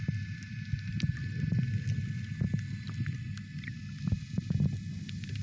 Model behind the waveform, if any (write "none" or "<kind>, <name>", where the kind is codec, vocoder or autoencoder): none